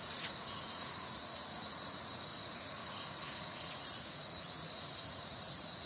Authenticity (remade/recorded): remade